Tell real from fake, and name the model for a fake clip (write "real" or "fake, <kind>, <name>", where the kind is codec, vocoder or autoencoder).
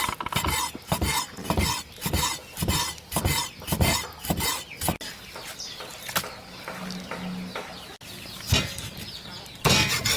real